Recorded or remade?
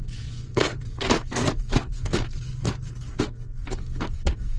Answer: remade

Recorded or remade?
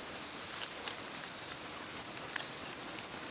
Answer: recorded